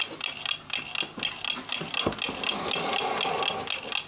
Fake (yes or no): no